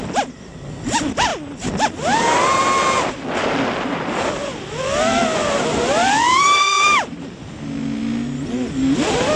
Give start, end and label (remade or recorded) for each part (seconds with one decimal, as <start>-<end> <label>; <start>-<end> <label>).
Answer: 0.0-9.4 recorded